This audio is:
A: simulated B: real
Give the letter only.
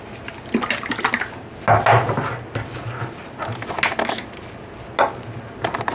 B